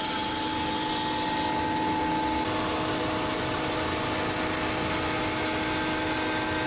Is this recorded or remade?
recorded